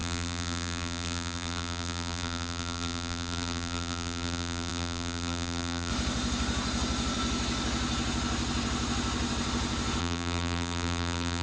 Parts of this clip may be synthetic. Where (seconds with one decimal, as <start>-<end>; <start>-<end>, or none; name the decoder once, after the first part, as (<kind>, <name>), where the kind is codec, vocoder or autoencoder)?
0.0-5.9 (vocoder, BigVGAN v2); 10.0-11.4

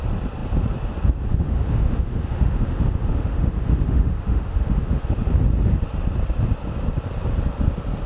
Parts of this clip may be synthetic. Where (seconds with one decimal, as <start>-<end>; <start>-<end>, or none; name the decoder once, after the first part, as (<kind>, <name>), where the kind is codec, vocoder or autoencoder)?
1.3-5.2 (autoencoder, DAC-VAE)